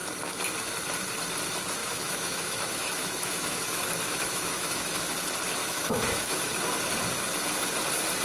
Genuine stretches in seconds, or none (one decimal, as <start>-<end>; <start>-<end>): 0.0-1.8; 5.1-5.6; 6.5-8.2

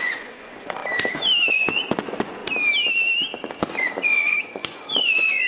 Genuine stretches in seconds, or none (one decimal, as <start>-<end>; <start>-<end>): 0.8-1.5; 2.4-3.7